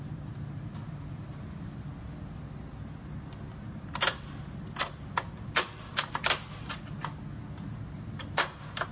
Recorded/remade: recorded